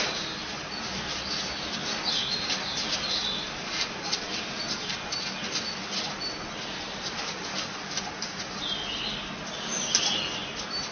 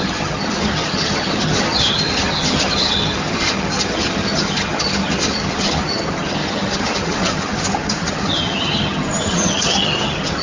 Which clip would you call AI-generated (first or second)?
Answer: second